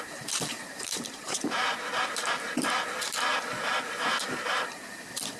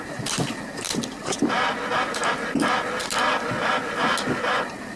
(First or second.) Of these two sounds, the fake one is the first